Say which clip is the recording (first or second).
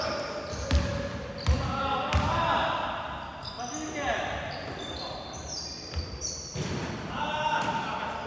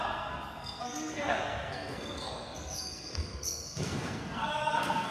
first